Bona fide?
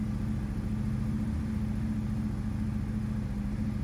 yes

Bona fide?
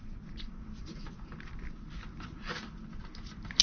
yes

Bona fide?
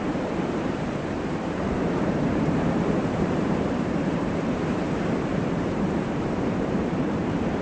no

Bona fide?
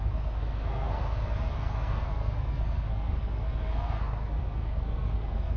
no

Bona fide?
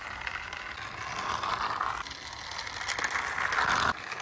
yes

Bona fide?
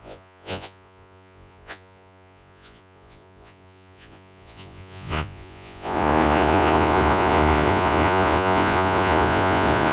no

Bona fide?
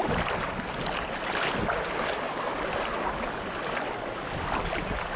yes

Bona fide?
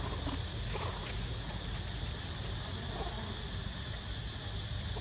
yes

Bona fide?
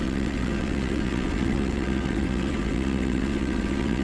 no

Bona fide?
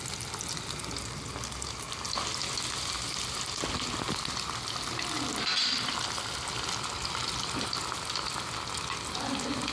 yes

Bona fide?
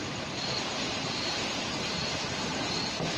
yes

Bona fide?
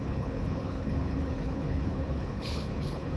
no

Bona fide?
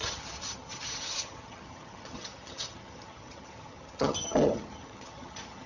no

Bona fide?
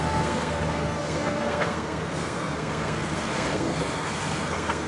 no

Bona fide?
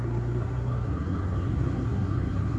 no